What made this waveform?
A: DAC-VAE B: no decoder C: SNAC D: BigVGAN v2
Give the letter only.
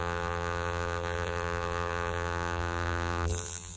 D